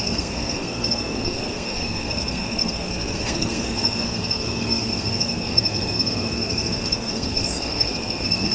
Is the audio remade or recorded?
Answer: remade